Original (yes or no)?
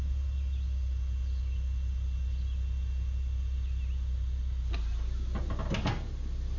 yes